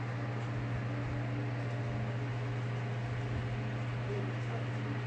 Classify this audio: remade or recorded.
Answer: recorded